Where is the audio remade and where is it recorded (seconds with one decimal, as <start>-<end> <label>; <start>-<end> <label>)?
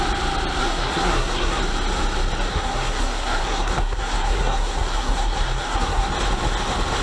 0.0-0.6 recorded; 0.6-1.6 remade; 1.6-2.5 recorded; 2.5-6.1 remade; 6.1-7.0 recorded